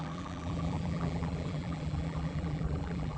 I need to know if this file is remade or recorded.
remade